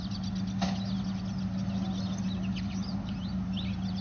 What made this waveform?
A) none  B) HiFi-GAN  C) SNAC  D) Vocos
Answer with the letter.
A